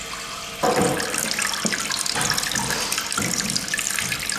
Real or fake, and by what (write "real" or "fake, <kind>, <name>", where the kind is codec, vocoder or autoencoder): real